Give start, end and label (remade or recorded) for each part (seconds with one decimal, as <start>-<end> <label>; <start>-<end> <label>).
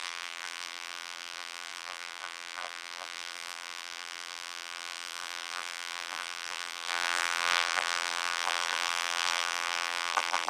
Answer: 0.0-10.5 remade